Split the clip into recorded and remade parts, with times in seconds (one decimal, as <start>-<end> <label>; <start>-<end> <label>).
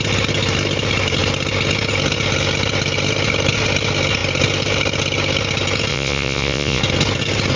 0.0-5.9 recorded; 5.9-6.8 remade; 6.8-7.6 recorded